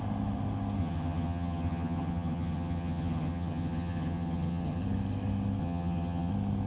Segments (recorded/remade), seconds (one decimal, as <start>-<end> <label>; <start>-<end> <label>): 0.0-0.8 recorded; 0.8-4.8 remade; 4.8-5.6 recorded; 5.6-6.3 remade; 6.3-6.7 recorded